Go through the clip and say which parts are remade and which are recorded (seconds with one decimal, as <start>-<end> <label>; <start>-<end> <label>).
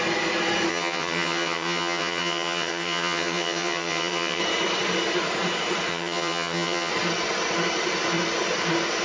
0.0-0.7 recorded; 0.7-4.4 remade; 4.4-5.9 recorded; 5.9-6.9 remade; 6.9-9.0 recorded